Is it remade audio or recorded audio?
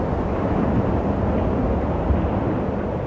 recorded